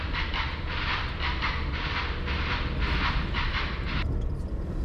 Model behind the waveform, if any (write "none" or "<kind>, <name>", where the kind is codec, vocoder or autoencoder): vocoder, BigVGAN v2